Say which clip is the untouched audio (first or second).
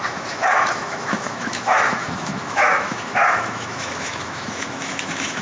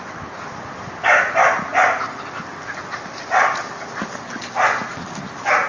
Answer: second